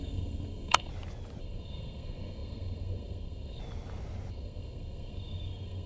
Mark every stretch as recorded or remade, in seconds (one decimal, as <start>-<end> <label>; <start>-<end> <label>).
0.0-0.9 remade; 0.9-1.4 recorded; 1.4-3.6 remade; 3.6-4.3 recorded; 4.3-5.9 remade